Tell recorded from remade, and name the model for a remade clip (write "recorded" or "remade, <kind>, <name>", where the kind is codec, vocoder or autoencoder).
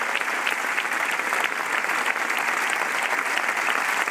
recorded